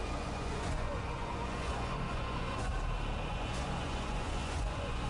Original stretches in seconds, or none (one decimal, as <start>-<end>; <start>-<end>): 2.7-3.3